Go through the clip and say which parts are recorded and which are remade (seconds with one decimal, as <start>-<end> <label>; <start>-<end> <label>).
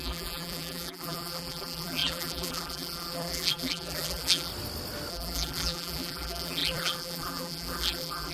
0.0-4.5 remade; 4.5-5.1 recorded; 5.1-8.3 remade